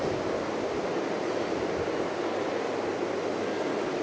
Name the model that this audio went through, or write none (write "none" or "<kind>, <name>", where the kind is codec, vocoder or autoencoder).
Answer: none